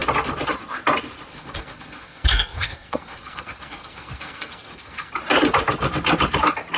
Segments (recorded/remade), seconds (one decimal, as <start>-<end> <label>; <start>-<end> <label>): 0.0-1.3 recorded; 1.3-5.1 remade; 5.1-6.8 recorded